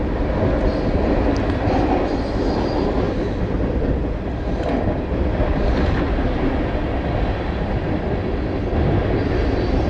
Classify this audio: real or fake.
real